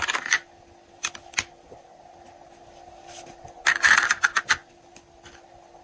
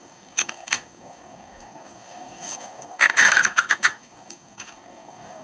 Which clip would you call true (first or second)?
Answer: first